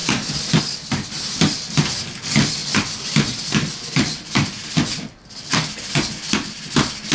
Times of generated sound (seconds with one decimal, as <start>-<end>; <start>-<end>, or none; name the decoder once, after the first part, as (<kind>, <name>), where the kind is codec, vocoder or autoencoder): none